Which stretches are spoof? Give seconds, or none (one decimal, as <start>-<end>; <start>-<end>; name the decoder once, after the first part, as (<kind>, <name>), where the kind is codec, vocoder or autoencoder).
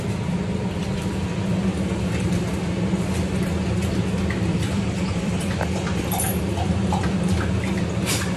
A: 4.5-7.7 (vocoder, BigVGAN v2)